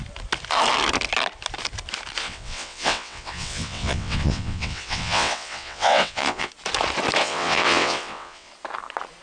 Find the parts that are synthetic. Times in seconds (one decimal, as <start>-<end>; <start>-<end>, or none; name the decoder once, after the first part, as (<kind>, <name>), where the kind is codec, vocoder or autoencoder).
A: 2.2-6.5 (vocoder, WaveNeXt); 7.2-8.5